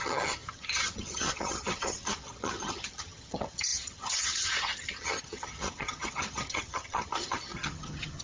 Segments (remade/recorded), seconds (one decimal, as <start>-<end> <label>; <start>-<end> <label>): 0.0-8.2 remade